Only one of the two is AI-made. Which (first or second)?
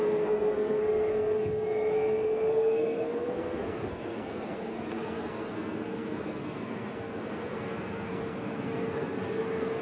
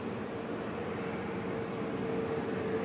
first